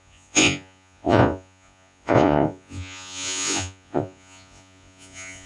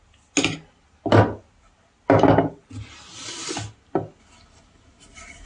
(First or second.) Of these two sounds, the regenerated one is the first